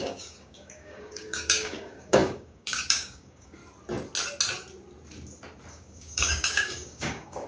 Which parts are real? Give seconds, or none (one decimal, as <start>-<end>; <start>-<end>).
3.6-5.7